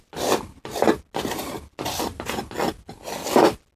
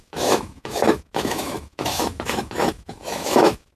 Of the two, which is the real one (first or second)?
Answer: first